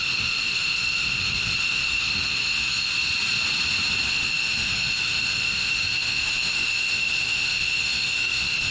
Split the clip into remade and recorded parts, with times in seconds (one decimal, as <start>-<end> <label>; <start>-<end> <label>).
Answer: 0.0-2.9 remade; 2.9-4.1 recorded; 4.1-8.7 remade